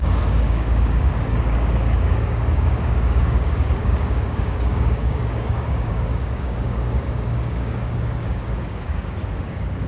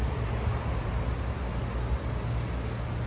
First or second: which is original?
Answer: second